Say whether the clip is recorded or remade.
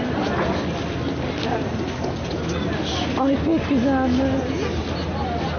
recorded